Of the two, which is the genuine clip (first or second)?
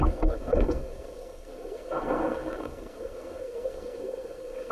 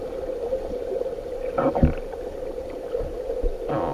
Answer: second